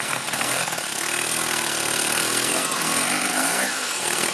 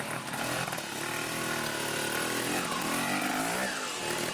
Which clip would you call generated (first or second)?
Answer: first